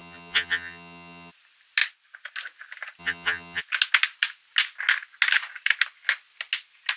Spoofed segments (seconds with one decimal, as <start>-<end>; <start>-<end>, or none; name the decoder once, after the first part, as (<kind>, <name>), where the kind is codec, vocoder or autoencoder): 0.0-1.3 (vocoder, HiFi-GAN); 3.0-3.6